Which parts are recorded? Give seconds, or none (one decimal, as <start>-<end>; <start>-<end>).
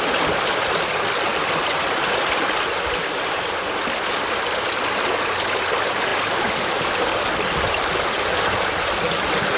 0.0-6.1; 8.9-9.6